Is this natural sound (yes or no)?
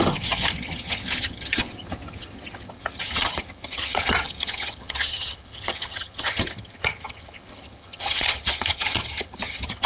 no